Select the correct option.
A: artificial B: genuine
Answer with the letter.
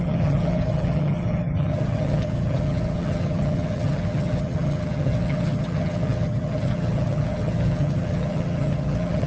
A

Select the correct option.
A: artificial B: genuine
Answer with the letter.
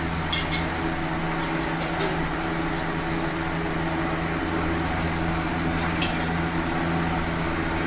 B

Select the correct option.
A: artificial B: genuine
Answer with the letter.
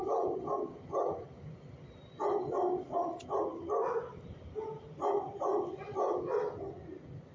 B